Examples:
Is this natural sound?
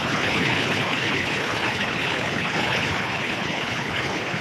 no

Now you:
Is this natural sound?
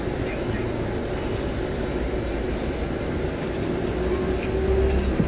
yes